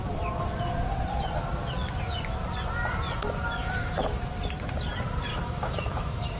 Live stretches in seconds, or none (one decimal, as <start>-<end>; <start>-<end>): 0.0-3.6; 4.2-5.3